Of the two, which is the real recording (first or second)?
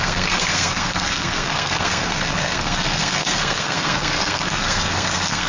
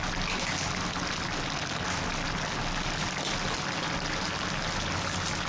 second